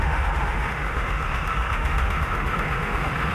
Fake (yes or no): yes